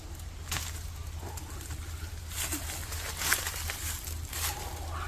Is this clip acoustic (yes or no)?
yes